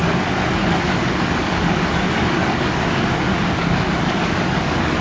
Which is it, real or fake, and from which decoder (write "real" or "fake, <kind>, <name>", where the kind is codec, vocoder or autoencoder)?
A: fake, codec, DAC